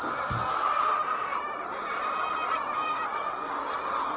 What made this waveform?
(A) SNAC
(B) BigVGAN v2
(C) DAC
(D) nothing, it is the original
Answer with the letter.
D